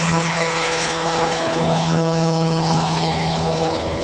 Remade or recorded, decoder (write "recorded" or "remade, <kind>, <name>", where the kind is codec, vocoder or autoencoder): remade, codec, HILCodec